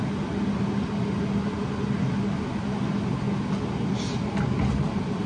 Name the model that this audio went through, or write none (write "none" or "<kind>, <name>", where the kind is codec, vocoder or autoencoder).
none